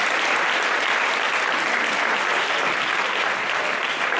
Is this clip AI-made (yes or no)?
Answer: no